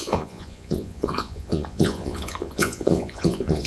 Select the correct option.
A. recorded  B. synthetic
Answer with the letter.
B